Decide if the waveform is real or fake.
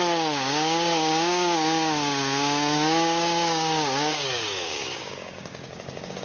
fake